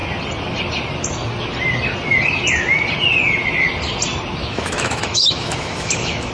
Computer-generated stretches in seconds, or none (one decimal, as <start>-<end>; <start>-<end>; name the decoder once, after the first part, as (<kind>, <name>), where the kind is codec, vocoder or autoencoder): 4.4-6.3 (autoencoder, DAC-VAE)